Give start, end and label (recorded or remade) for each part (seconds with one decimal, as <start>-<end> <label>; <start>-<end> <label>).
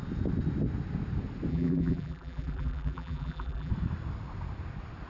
0.0-1.5 recorded; 1.5-3.7 remade; 3.7-5.1 recorded